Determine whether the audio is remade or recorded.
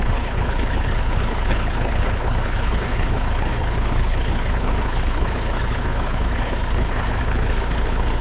remade